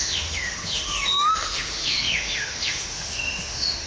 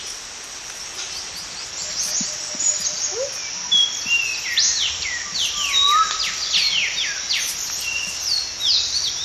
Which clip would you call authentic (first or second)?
second